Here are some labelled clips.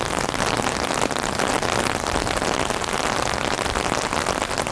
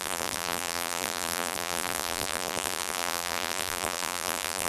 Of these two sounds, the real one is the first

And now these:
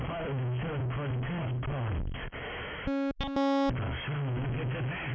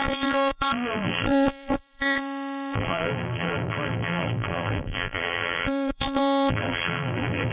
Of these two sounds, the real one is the first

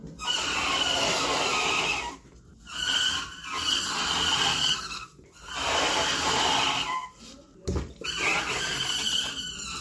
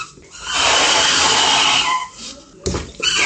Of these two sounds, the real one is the first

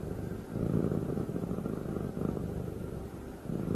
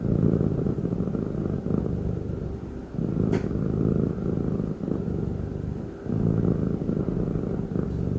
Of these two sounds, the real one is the second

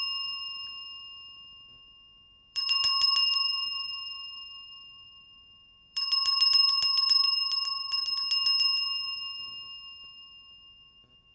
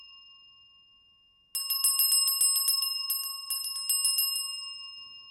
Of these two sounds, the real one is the second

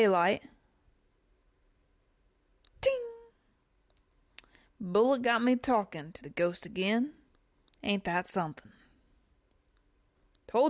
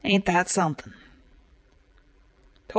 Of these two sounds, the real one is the first